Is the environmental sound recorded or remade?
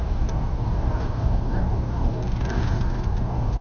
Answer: remade